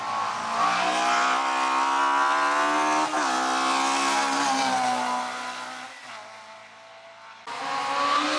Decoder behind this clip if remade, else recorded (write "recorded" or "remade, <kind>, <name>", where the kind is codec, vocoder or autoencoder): recorded